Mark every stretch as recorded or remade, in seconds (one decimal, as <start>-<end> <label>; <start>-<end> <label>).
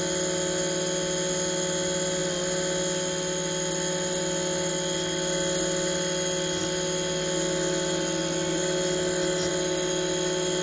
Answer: 0.0-10.6 recorded